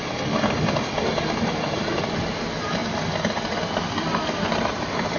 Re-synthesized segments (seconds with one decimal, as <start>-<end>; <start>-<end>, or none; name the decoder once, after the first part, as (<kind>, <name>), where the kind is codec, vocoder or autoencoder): 0.0-2.8 (vocoder, BigVGAN v2); 4.5-5.2